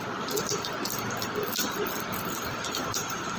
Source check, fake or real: real